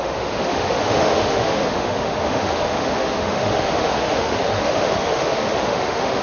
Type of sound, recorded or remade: remade